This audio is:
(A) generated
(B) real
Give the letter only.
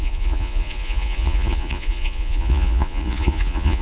A